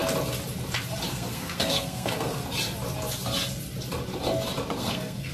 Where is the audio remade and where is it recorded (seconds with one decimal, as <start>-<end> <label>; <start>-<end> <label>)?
0.0-1.1 recorded; 1.1-2.4 remade; 2.4-4.7 recorded; 4.7-5.3 remade